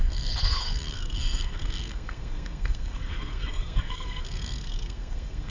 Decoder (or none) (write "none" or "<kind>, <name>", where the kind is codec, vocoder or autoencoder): codec, SNAC